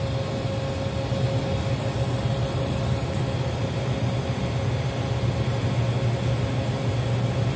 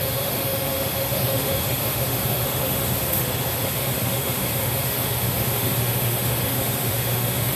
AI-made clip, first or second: second